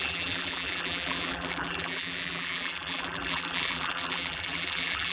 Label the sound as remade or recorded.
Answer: remade